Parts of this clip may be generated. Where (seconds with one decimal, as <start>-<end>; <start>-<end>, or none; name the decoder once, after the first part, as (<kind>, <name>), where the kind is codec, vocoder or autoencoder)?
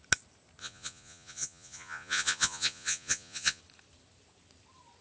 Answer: 0.6-3.6 (vocoder, Vocos)